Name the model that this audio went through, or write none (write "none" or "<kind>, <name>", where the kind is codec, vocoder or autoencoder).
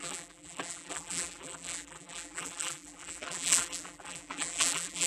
vocoder, BigVGAN v2